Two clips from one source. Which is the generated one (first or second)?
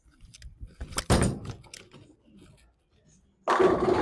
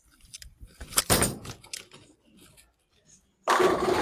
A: second